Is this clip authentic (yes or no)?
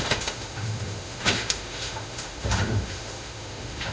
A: no